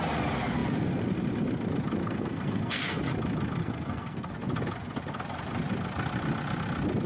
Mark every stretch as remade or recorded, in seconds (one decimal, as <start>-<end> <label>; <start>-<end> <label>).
0.0-2.0 recorded; 2.0-3.0 remade; 3.0-3.6 recorded; 3.6-4.3 remade; 4.3-7.1 recorded